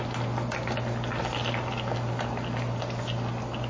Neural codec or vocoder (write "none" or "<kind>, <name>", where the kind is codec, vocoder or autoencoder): none